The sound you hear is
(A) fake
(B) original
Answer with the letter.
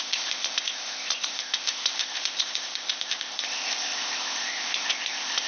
A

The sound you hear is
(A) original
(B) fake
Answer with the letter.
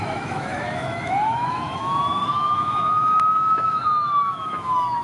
B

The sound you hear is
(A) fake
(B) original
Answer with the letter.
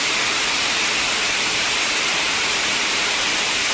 A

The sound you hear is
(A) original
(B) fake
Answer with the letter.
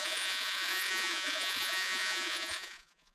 B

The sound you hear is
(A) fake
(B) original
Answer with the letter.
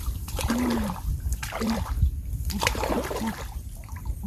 A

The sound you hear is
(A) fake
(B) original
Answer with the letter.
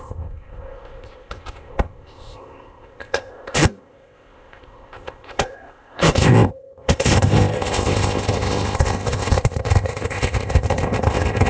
A